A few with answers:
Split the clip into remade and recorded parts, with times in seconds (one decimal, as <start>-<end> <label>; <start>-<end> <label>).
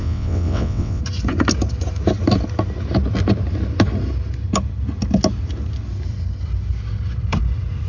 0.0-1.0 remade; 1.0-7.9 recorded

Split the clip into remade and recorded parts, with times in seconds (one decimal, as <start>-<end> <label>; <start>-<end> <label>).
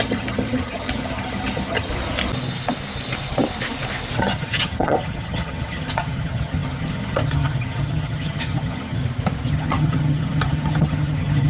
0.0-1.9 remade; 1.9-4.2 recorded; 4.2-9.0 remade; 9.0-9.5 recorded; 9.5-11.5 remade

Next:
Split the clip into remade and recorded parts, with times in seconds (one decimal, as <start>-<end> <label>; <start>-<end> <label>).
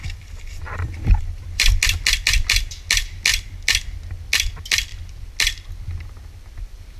0.0-1.7 remade; 1.7-7.0 recorded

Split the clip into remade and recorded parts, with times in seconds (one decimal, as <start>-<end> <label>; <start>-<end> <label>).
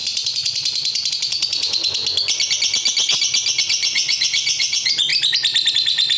0.0-2.0 remade; 2.0-3.6 recorded; 3.6-5.1 remade; 5.1-5.7 recorded; 5.7-6.2 remade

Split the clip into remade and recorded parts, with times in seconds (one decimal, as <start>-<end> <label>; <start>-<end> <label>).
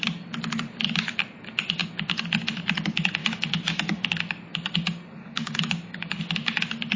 0.0-3.2 recorded; 3.2-4.1 remade; 4.1-5.2 recorded; 5.2-6.2 remade; 6.2-7.0 recorded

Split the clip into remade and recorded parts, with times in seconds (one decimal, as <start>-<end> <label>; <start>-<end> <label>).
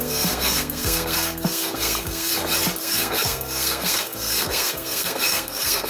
0.0-2.3 remade; 2.3-2.8 recorded; 2.8-5.9 remade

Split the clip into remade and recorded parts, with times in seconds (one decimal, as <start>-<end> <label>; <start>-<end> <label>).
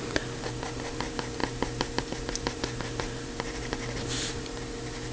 0.0-5.1 recorded